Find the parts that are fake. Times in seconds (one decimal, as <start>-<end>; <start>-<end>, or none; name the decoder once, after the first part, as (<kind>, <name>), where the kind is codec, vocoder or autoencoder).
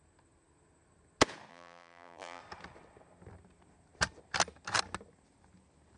1.5-2.4 (vocoder, BigVGAN v2)